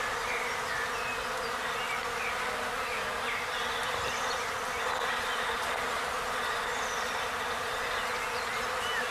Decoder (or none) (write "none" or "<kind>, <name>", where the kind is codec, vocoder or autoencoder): none